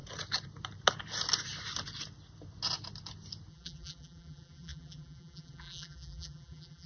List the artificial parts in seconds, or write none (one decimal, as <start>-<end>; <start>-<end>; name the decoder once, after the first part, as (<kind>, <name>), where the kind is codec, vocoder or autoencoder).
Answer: 3.5-6.9 (vocoder, BigVGAN v2)